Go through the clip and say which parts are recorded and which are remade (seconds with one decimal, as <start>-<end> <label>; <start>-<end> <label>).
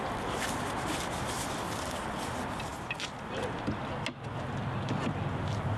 0.0-5.8 recorded